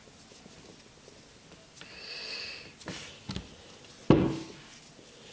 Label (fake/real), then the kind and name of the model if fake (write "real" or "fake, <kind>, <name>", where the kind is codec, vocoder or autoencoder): real